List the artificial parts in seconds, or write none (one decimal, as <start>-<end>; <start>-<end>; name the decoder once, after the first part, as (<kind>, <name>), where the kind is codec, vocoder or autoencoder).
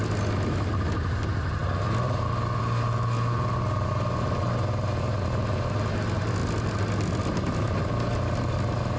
none